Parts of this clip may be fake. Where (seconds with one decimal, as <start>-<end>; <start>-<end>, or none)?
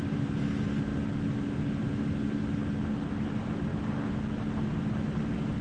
none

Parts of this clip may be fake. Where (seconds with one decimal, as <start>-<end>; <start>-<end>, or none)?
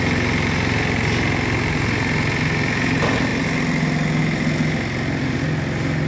none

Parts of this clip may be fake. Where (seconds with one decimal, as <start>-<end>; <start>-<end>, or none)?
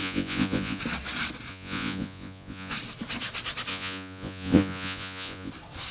0.0-0.8; 1.5-2.7; 3.7-5.5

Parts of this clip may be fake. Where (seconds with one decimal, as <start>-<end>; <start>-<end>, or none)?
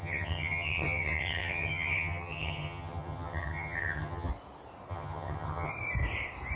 0.0-4.3; 4.9-5.7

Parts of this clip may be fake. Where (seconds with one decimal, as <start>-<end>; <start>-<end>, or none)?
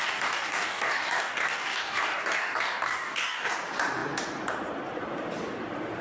0.0-3.5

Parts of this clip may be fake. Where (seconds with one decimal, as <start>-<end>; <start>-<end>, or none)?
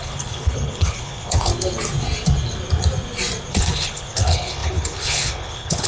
0.0-1.5; 3.5-5.9